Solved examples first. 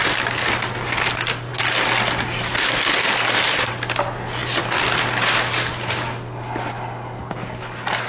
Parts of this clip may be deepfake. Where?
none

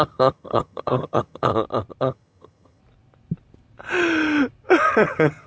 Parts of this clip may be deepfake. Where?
0.0-1.5 (vocoder, HiFi-GAN); 2.0-2.8; 4.9-5.5

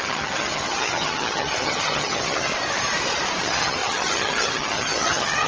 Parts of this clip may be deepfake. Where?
0.0-2.5 (vocoder, HiFi-GAN); 3.4-5.5

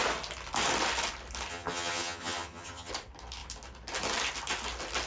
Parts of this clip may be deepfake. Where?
1.5-2.9 (vocoder, HiFi-GAN)

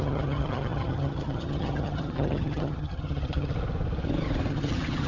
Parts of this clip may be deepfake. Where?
0.0-3.5 (vocoder, HiFi-GAN); 4.5-5.1